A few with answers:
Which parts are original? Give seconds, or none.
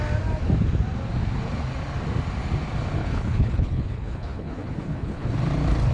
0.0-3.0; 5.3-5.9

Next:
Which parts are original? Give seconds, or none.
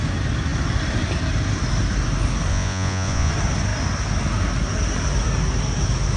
0.0-2.5; 3.3-6.2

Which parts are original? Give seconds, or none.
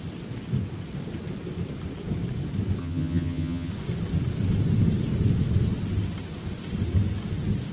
0.0-2.8; 3.7-7.7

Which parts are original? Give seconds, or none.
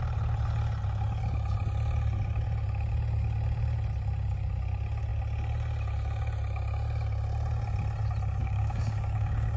0.0-8.4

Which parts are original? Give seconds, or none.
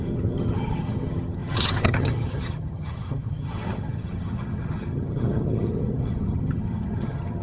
none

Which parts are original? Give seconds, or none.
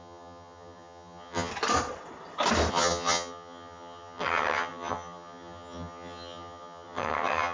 1.5-2.7